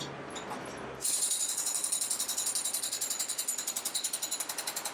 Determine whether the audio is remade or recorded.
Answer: recorded